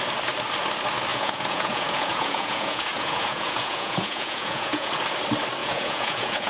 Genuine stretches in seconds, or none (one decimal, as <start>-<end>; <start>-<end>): 0.0-1.1; 4.9-5.6